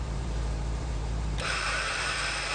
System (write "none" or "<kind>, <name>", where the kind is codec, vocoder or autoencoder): vocoder, BigVGAN v2